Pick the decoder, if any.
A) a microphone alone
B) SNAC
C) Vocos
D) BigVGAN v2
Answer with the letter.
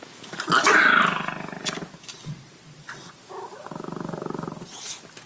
A